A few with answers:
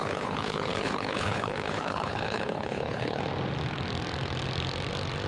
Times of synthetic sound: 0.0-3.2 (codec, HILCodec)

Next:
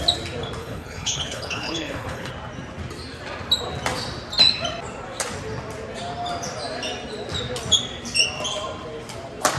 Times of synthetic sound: 0.6-2.3 (codec, HILCodec)

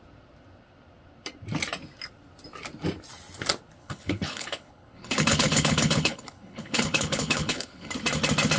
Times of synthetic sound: 3.8-7.9 (codec, HILCodec)